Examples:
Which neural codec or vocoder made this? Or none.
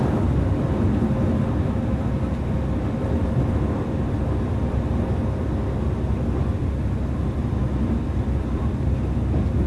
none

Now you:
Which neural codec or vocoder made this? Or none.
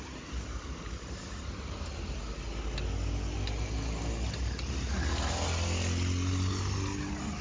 none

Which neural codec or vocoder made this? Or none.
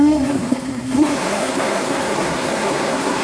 codec, SNAC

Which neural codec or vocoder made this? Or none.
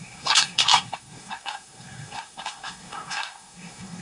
codec, SNAC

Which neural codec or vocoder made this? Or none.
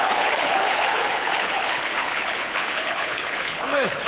codec, HILCodec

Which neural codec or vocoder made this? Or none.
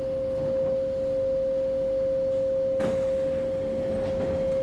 none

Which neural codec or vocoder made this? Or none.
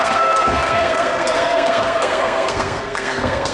codec, SNAC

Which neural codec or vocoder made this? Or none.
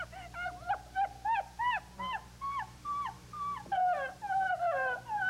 none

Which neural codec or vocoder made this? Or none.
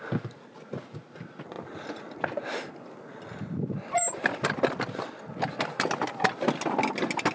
none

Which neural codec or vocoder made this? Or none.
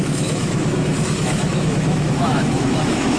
autoencoder, DAC-VAE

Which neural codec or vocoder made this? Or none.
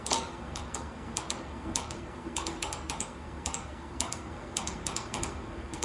codec, SNAC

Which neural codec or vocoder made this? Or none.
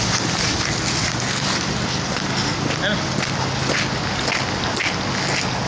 none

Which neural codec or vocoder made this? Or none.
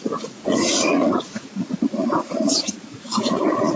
vocoder, Vocos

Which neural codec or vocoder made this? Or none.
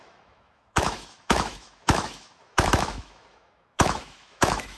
autoencoder, DAC-VAE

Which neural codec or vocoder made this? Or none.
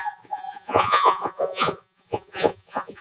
vocoder, Vocos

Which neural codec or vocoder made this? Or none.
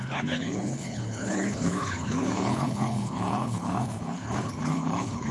codec, HILCodec